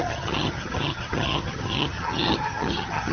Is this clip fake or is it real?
fake